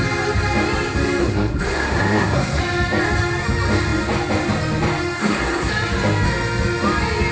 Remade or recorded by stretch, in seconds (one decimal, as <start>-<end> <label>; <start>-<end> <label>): 0.0-1.2 recorded; 1.2-2.6 remade; 2.6-5.2 recorded; 5.2-5.7 remade; 5.7-7.3 recorded